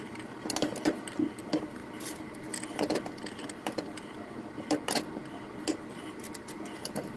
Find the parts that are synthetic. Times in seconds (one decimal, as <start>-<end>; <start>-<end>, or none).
none